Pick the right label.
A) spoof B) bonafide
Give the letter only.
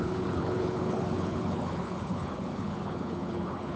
A